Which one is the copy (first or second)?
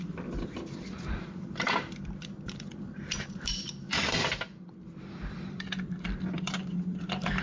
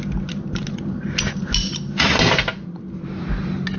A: first